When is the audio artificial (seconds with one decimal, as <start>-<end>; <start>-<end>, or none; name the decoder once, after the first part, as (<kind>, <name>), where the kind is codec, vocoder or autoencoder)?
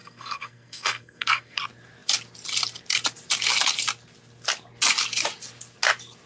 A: 0.0-1.6 (codec, SNAC)